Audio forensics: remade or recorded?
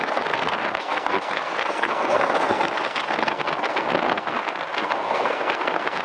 remade